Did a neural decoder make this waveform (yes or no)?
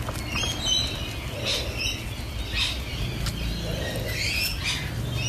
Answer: no